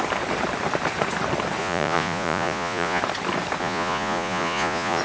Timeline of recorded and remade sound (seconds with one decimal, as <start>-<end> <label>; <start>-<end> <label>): 0.0-1.6 recorded; 1.6-3.0 remade; 3.0-3.6 recorded; 3.6-5.0 remade